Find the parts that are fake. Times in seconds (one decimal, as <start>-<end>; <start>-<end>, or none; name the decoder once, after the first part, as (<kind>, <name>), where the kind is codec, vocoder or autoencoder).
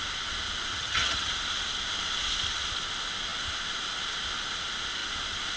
0.7-1.3 (vocoder, HiFi-GAN)